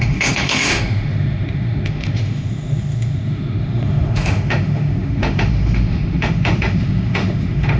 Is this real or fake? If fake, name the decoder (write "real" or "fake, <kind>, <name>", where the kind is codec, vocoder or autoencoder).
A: fake, autoencoder, DAC-VAE